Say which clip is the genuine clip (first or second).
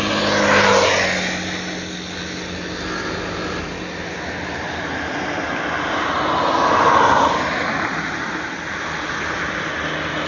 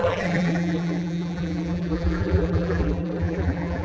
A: first